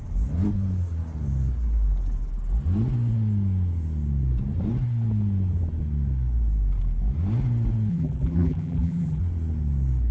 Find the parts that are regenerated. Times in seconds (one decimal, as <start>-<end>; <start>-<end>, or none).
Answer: 7.9-9.2